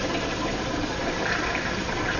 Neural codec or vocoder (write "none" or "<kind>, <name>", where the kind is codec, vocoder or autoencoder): vocoder, BigVGAN v2